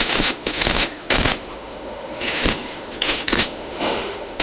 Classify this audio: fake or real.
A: fake